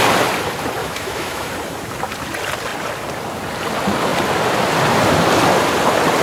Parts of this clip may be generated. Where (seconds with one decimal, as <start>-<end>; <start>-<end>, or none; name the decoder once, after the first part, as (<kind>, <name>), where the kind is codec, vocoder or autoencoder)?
0.8-1.5 (autoencoder, DAC-VAE)